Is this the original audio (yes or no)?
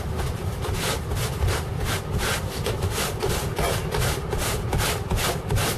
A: yes